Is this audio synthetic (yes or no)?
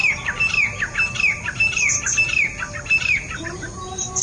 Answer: no